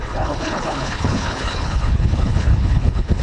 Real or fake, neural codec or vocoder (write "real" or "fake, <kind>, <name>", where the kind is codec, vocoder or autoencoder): fake, codec, HILCodec